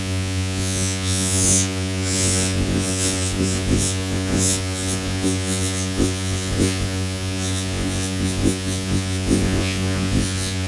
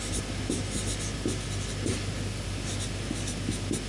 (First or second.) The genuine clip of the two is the second